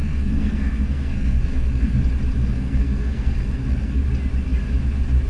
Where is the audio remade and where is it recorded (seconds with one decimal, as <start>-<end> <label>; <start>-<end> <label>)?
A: 0.0-2.0 remade; 2.0-2.4 recorded; 2.4-4.0 remade; 4.0-5.3 recorded

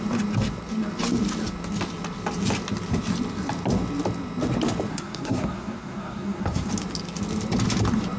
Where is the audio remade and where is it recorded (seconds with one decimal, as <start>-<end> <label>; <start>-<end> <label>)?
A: 0.0-4.9 recorded; 4.9-6.7 remade; 6.7-8.2 recorded

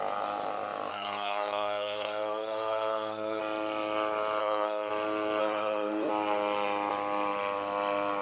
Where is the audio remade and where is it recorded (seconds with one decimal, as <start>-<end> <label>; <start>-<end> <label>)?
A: 0.0-0.9 recorded; 0.9-3.4 remade; 3.4-4.4 recorded; 4.4-4.9 remade; 4.9-5.4 recorded; 5.4-6.1 remade; 6.1-8.2 recorded

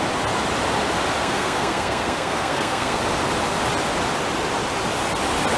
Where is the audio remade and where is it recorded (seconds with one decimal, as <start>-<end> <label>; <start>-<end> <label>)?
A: 0.0-1.2 recorded; 1.2-3.0 remade; 3.0-5.6 recorded

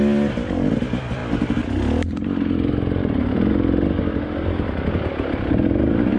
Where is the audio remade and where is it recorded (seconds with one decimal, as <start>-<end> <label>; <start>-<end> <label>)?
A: 0.0-6.2 recorded